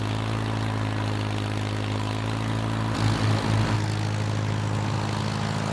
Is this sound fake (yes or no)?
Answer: no